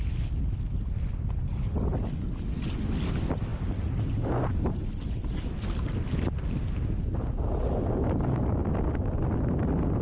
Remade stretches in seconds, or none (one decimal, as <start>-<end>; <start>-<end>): none